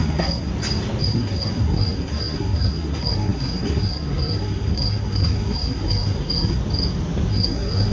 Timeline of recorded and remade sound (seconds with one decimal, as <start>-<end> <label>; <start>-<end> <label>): 0.0-0.5 remade; 0.5-1.0 recorded; 1.0-6.6 remade; 6.6-7.3 recorded; 7.3-7.9 remade